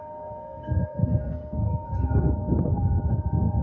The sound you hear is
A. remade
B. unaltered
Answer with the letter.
A